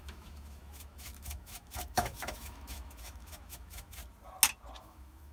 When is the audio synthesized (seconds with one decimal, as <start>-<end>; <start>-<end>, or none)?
0.0-4.0; 4.8-5.3